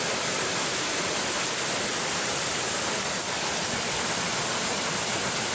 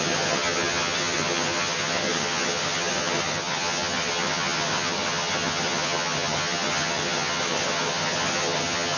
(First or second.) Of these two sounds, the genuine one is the first